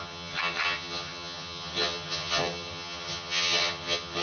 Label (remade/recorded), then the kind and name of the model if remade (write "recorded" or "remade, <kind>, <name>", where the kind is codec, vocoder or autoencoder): remade, vocoder, HiFi-GAN